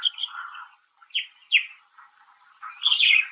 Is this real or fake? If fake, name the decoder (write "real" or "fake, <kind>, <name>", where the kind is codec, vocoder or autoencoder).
real